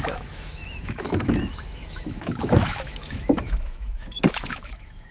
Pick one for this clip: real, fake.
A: fake